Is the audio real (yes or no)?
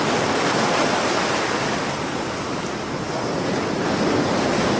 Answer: yes